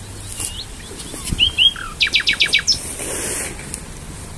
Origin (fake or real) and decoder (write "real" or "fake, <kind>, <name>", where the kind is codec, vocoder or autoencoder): real